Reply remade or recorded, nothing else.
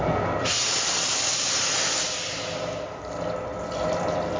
recorded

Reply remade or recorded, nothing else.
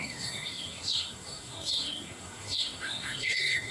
remade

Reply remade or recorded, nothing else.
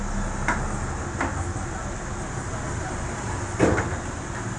recorded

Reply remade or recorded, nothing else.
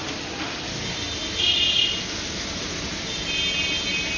recorded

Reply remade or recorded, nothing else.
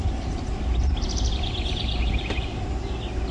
recorded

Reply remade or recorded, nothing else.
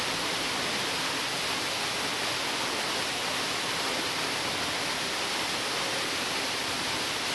recorded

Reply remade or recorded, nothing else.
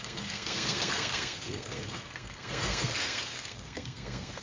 remade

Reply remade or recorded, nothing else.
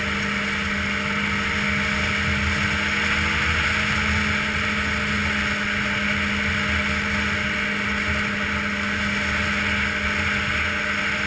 recorded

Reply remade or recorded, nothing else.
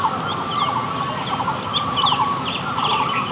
recorded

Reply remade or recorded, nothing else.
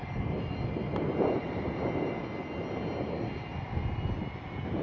recorded